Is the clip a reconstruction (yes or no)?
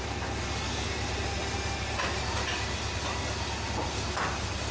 no